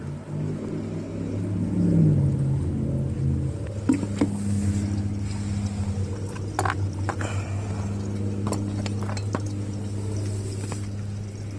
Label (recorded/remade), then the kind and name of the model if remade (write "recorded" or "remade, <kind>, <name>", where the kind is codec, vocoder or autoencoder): recorded